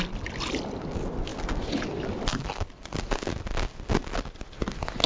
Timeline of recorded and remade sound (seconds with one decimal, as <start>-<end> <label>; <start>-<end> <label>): 0.0-5.1 recorded

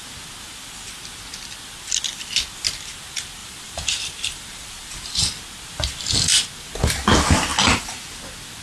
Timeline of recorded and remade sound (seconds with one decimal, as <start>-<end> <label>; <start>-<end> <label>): 0.0-3.4 recorded; 3.4-5.3 remade; 5.3-7.5 recorded; 7.5-8.0 remade; 8.0-8.6 recorded

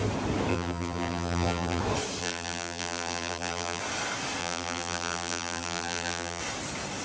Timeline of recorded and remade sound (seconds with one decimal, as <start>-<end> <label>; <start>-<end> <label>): 0.0-0.5 recorded; 0.5-1.8 remade; 1.8-2.2 recorded; 2.2-3.8 remade; 3.8-4.4 recorded; 4.4-6.4 remade; 6.4-7.0 recorded